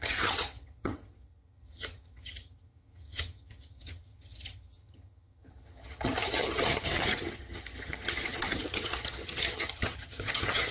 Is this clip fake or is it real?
fake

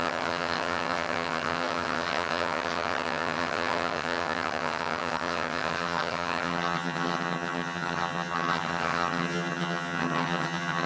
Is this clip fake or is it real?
fake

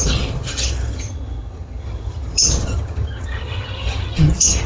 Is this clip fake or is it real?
fake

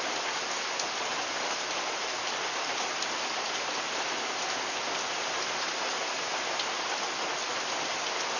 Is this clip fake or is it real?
real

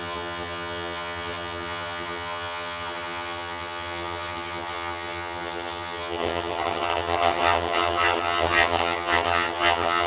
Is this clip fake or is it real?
fake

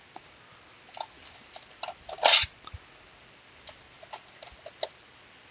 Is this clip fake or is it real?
real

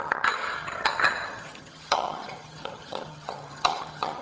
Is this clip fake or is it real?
fake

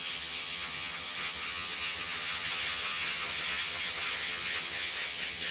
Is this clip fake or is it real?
fake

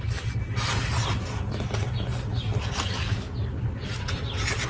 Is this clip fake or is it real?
real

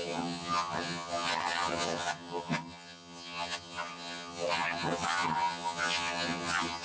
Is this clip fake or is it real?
fake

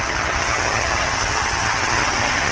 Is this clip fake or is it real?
fake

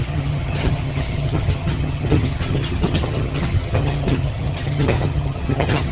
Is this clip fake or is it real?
fake